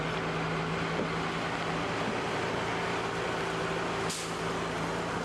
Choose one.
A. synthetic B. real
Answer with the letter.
B